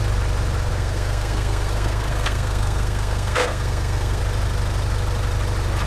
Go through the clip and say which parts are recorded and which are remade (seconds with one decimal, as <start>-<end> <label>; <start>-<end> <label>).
0.0-0.7 recorded; 0.7-4.2 remade; 4.2-5.9 recorded